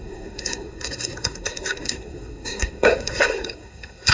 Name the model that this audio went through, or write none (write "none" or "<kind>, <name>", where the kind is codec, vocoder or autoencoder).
codec, SNAC